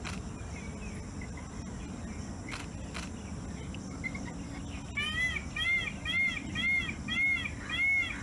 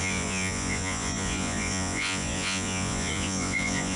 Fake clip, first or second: second